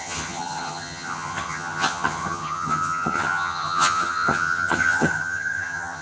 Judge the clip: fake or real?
fake